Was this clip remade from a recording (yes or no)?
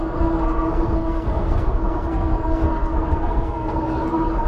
yes